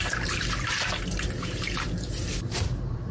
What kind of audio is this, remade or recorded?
remade